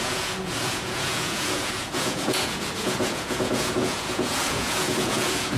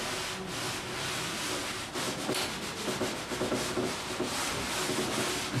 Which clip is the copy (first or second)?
first